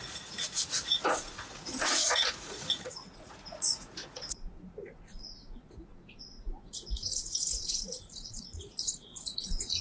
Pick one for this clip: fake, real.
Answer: fake